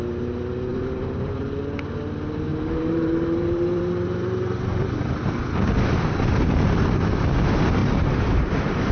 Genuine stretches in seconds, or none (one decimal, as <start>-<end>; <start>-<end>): 0.0-0.7; 1.4-2.5; 5.2-7.8